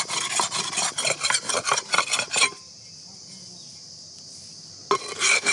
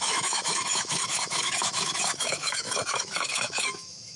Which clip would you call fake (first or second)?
second